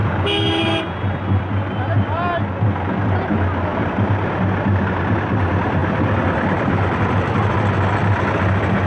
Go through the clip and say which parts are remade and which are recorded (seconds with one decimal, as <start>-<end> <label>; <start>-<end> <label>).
0.0-8.9 recorded